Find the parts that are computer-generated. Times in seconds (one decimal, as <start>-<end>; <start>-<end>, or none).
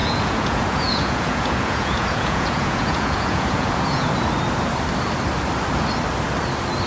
0.0-4.1